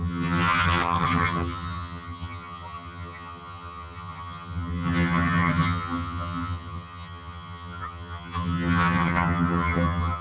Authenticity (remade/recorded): remade